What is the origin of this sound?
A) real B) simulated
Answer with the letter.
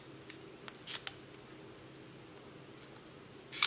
A